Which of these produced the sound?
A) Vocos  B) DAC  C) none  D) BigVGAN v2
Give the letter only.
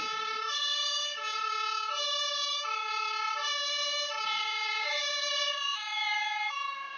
B